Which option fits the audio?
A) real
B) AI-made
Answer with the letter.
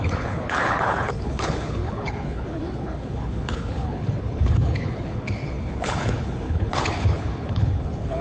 B